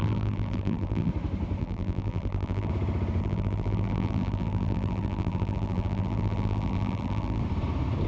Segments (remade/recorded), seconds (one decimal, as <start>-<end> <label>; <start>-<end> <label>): 0.0-1.1 remade; 1.1-1.6 recorded; 1.6-2.7 remade; 2.7-3.2 recorded; 3.2-7.4 remade; 7.4-8.1 recorded